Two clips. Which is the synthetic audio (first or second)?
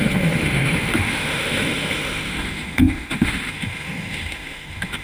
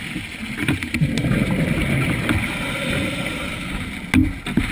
first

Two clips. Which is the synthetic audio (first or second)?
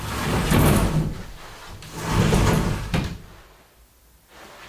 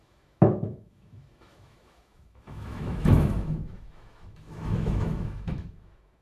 second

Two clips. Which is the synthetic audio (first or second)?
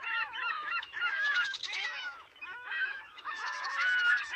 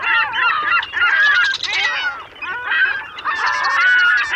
first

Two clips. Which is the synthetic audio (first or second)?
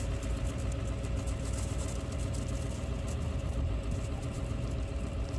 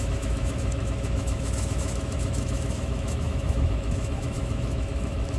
second